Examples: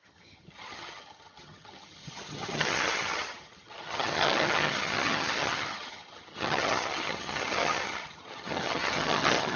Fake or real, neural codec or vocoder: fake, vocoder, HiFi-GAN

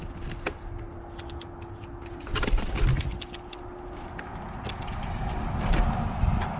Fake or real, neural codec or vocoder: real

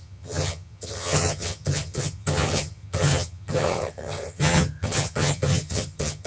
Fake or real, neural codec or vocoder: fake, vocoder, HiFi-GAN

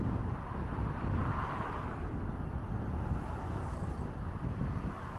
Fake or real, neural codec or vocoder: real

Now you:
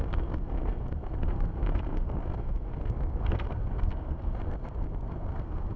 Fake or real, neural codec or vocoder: fake, codec, SNAC